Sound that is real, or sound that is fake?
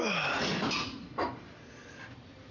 real